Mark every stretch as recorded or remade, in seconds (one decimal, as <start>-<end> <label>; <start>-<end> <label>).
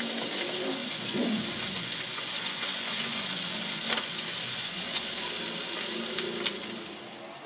0.0-0.8 recorded; 0.8-5.3 remade; 5.3-7.5 recorded